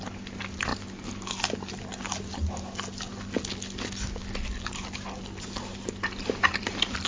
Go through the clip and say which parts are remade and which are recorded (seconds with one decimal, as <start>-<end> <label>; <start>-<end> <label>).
0.0-7.1 recorded